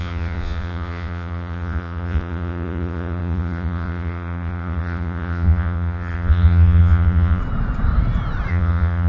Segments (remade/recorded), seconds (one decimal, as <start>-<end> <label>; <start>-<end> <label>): 0.0-7.4 remade; 7.4-8.5 recorded; 8.5-9.1 remade